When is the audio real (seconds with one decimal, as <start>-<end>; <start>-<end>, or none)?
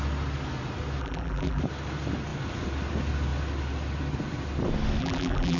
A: 0.0-1.0; 1.6-5.0